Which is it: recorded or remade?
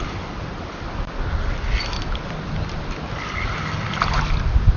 recorded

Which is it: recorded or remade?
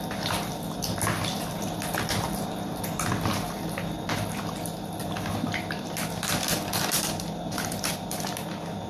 recorded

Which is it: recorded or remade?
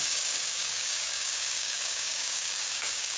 remade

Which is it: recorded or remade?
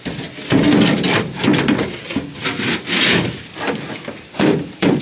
recorded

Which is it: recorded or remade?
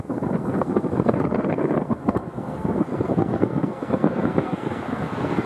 remade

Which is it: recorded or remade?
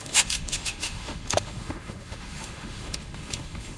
remade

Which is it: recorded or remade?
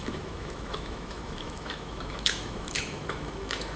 remade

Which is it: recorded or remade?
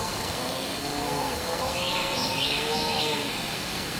remade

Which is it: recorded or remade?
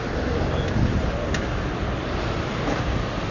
recorded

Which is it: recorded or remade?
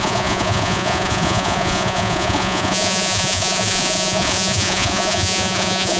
remade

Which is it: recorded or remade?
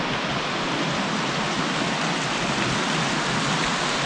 recorded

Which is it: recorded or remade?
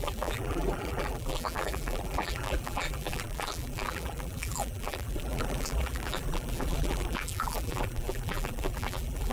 remade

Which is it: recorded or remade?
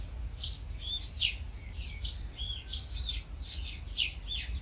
recorded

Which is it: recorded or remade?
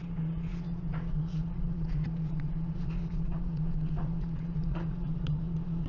remade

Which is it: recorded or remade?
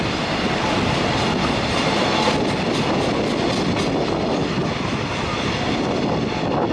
recorded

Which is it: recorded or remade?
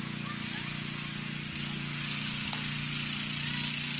recorded